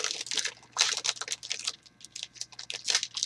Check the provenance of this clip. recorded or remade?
recorded